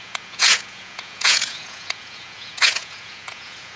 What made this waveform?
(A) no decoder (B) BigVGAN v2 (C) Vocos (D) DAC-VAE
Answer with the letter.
C